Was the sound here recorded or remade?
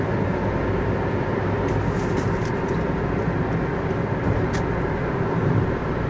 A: recorded